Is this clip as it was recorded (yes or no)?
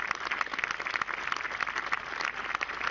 yes